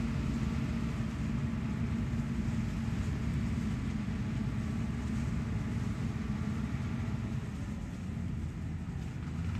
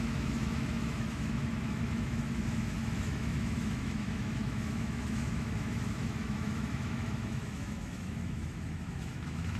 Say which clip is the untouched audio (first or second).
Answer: first